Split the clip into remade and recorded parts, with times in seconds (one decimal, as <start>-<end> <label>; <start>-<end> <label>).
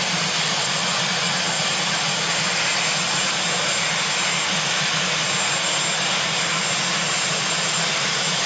0.0-2.3 remade; 2.3-7.3 recorded; 7.3-8.5 remade